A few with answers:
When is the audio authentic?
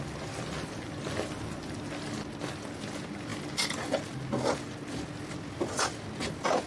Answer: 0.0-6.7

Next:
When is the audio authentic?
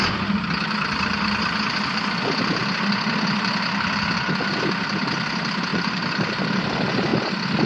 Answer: 0.0-5.7; 6.4-7.7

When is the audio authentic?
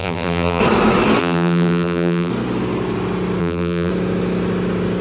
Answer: 0.6-1.2; 2.3-3.4; 3.9-5.0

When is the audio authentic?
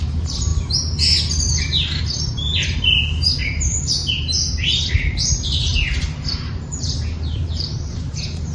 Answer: 0.5-2.0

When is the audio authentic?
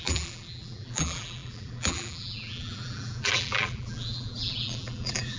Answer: none